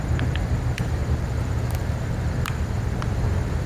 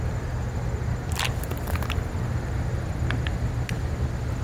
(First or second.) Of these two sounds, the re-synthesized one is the first